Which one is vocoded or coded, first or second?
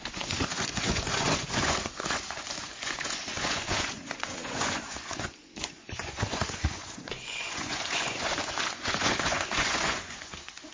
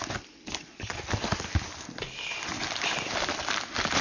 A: first